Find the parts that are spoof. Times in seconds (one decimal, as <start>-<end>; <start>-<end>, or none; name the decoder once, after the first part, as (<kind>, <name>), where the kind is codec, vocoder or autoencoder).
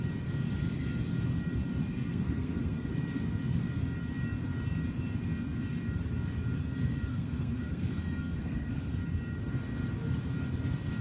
1.9-2.9 (codec, SNAC); 7.1-9.0